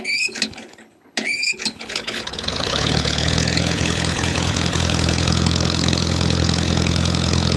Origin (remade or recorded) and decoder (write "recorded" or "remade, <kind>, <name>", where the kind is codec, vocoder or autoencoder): remade, codec, HILCodec